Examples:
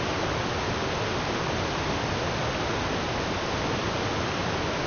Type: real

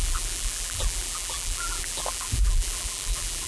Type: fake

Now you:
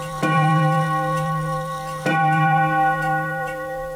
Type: fake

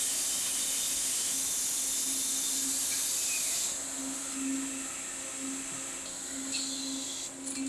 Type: real